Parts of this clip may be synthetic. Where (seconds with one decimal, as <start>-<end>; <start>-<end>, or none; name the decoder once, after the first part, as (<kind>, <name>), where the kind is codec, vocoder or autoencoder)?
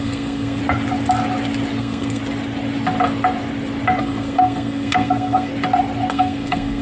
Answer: 0.0-0.6 (codec, SNAC); 1.8-2.2; 4.0-5.5; 6.1-6.8